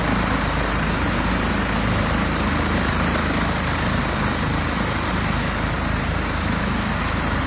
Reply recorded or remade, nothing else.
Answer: recorded